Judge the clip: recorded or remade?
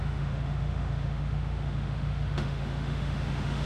remade